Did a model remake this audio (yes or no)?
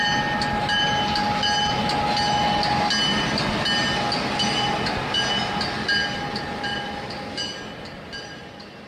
no